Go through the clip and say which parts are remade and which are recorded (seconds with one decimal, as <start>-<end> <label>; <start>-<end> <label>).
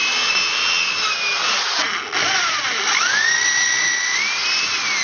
0.0-5.0 recorded